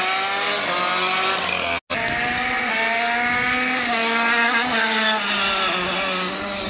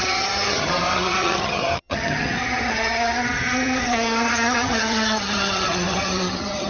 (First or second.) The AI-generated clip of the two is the second